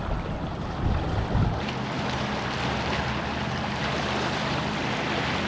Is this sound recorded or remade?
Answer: recorded